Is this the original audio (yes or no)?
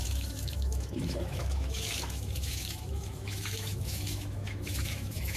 no